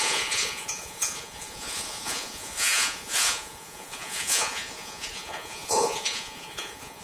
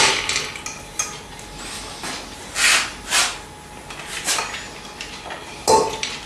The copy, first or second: first